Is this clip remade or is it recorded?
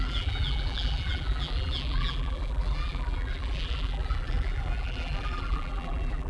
remade